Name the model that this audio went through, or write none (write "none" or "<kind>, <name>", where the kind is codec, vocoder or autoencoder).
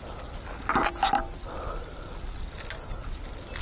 none